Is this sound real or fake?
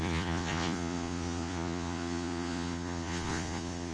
fake